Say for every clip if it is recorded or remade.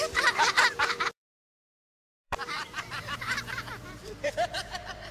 remade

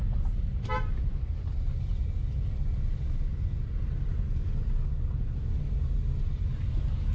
recorded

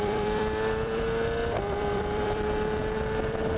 remade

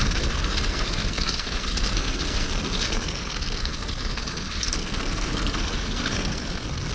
remade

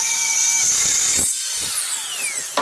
recorded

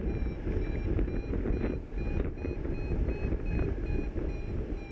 recorded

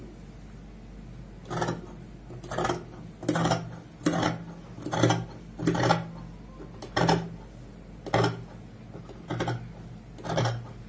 recorded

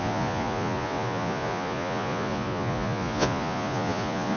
remade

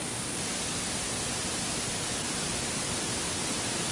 recorded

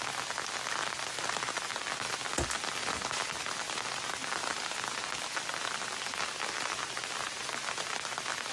recorded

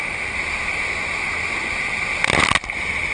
recorded